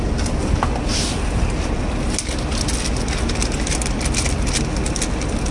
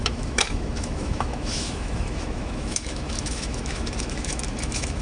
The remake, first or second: second